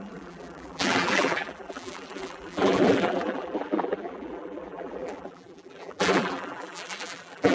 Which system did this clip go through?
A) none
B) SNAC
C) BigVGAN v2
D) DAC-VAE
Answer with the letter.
C